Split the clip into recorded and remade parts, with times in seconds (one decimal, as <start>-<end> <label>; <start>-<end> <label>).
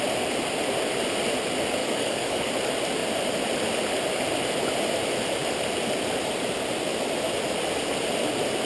0.0-1.8 recorded; 1.8-2.5 remade; 2.5-8.7 recorded